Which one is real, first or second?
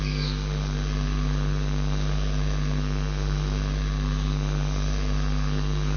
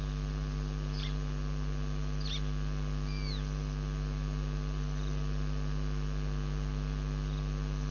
second